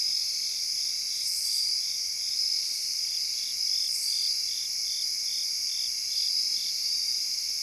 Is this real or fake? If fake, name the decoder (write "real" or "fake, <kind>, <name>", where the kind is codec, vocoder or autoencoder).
real